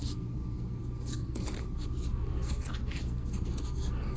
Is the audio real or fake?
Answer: fake